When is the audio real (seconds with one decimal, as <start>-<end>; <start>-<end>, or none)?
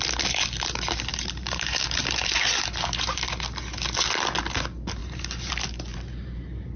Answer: 0.0-1.1; 2.4-5.0; 5.5-5.9